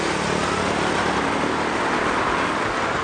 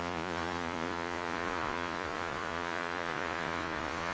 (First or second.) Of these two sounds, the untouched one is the first